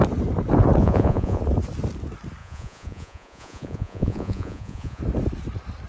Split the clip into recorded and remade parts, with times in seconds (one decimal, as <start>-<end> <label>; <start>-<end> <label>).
0.0-0.8 recorded; 0.8-1.4 remade; 1.4-2.4 recorded; 2.4-5.0 remade; 5.0-5.9 recorded

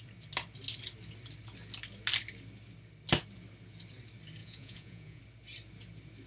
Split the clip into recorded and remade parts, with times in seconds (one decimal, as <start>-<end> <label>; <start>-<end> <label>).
0.0-4.4 recorded; 4.4-5.2 remade; 5.2-6.3 recorded

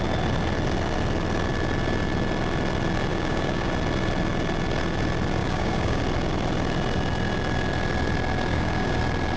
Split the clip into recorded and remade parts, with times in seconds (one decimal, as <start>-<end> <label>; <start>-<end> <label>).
0.0-3.1 recorded; 3.1-3.7 remade; 3.7-5.4 recorded; 5.4-6.0 remade; 6.0-8.5 recorded; 8.5-9.0 remade; 9.0-9.4 recorded

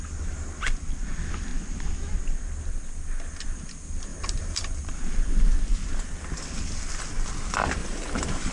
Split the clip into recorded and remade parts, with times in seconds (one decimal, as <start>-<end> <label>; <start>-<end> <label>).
0.0-4.1 recorded; 4.1-4.9 remade; 4.9-7.8 recorded; 7.8-8.5 remade

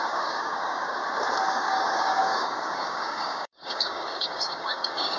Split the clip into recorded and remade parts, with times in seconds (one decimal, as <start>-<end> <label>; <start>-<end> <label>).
0.0-1.0 remade; 1.0-1.5 recorded; 1.5-5.2 remade

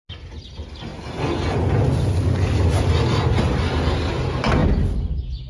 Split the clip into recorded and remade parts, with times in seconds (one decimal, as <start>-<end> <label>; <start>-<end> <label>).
0.0-5.5 recorded